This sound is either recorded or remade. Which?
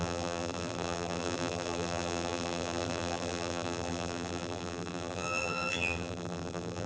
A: remade